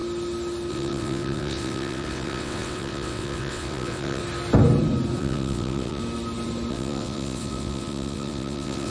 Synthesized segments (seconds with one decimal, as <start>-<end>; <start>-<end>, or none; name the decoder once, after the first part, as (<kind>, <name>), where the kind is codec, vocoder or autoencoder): 0.7-4.2 (vocoder, WaveNeXt); 5.2-6.0; 6.7-8.9